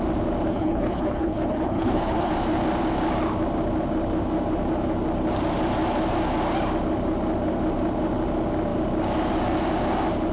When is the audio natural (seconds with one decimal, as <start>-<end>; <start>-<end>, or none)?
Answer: 0.0-0.5; 2.3-10.3